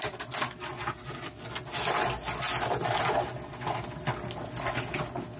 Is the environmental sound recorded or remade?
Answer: recorded